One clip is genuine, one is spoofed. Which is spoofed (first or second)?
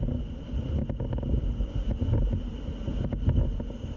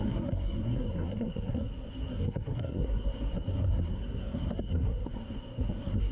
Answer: second